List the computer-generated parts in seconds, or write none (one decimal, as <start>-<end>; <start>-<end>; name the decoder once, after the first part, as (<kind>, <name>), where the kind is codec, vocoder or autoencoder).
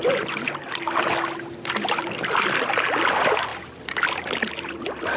3.5-4.2 (vocoder, BigVGAN v2)